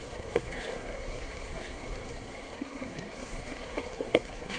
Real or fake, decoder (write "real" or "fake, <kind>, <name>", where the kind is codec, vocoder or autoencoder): fake, codec, SNAC